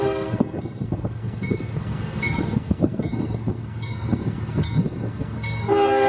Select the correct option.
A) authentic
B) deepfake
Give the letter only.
B